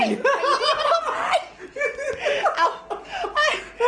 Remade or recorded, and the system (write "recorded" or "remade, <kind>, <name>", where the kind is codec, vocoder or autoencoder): recorded